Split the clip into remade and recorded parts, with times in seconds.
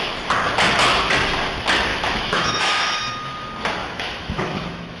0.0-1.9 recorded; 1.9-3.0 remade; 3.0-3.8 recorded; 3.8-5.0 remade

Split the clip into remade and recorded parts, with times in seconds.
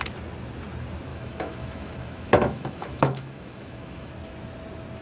0.0-1.1 recorded; 1.1-4.1 remade; 4.1-5.0 recorded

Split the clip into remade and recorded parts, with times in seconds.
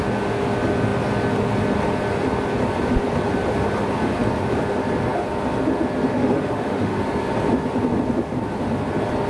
0.0-6.1 recorded; 6.1-7.0 remade; 7.0-9.3 recorded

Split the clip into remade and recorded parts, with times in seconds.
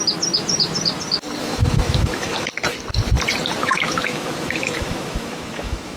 0.0-1.4 recorded; 1.4-2.5 remade; 2.5-3.6 recorded; 3.6-6.0 remade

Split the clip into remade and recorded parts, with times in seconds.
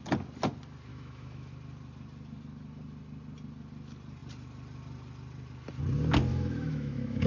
0.0-0.9 recorded; 0.9-1.5 remade; 1.5-6.3 recorded; 6.3-7.3 remade